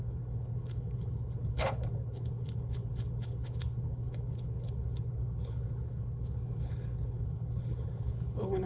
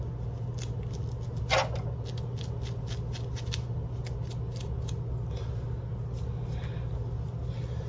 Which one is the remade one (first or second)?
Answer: first